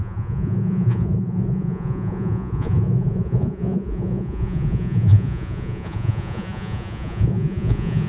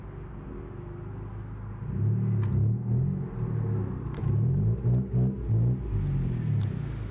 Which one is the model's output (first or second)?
first